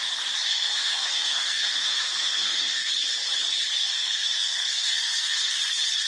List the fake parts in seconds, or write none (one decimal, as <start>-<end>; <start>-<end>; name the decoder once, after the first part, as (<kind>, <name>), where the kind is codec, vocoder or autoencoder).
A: 0.5-2.9 (codec, SNAC); 3.9-5.6